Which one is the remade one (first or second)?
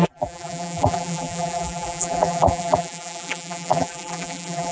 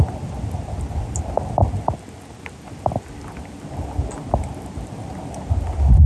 first